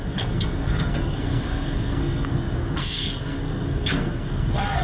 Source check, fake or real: fake